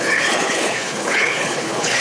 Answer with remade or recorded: remade